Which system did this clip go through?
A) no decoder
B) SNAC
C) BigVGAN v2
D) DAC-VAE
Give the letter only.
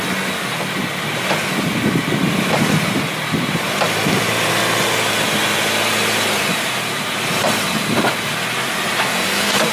A